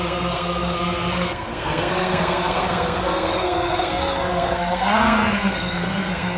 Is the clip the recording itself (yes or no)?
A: no